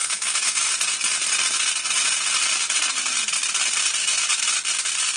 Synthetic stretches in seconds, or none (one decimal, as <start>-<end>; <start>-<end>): 0.0-0.7; 4.0-4.5